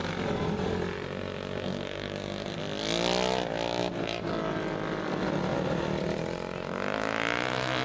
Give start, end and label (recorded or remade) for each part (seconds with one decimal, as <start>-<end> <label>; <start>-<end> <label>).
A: 0.0-2.6 remade; 2.6-3.8 recorded; 3.8-4.3 remade; 4.3-7.8 recorded